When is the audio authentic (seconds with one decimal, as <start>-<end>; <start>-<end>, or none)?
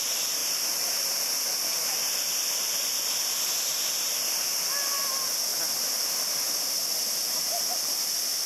0.0-0.4; 1.2-8.5